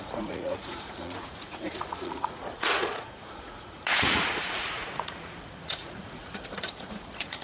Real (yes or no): no